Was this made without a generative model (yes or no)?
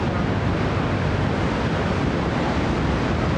yes